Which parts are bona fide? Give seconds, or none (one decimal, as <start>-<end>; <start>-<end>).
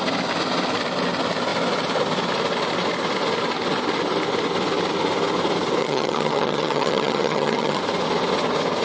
0.0-5.8; 7.8-8.8